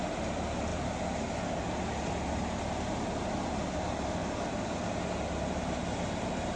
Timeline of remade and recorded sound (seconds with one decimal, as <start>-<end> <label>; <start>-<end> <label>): 0.0-6.6 recorded